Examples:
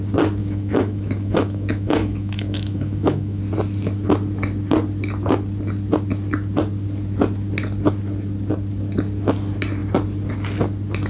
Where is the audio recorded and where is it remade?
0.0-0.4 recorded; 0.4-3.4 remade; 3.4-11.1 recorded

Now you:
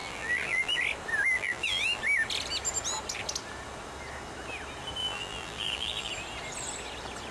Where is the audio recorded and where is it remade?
0.0-0.8 remade; 0.8-1.3 recorded; 1.3-2.0 remade; 2.0-5.0 recorded; 5.0-6.1 remade; 6.1-7.3 recorded

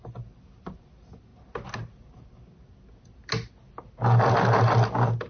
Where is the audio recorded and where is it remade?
0.0-5.3 recorded

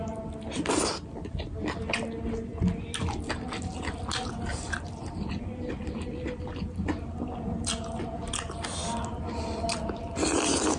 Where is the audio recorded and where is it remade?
0.0-10.8 recorded

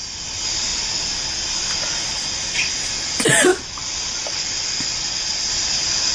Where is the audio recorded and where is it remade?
0.0-0.7 remade; 0.7-1.8 recorded; 1.8-6.1 remade

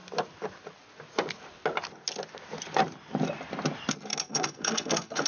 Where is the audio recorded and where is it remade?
0.0-4.1 recorded; 4.1-5.3 remade

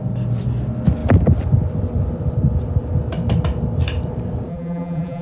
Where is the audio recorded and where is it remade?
0.0-4.5 recorded; 4.5-5.2 remade